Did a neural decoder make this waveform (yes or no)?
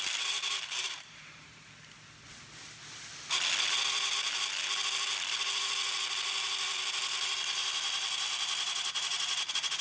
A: no